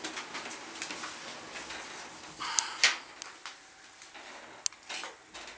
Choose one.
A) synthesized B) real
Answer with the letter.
B